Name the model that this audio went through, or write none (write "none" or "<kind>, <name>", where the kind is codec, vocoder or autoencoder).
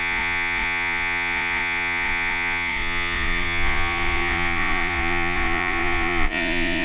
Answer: vocoder, Vocos